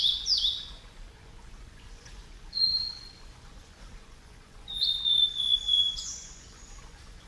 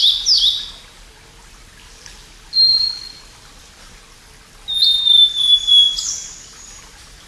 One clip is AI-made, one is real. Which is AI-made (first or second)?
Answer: first